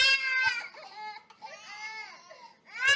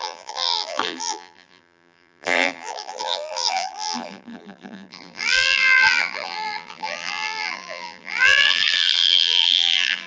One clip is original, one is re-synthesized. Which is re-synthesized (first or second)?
second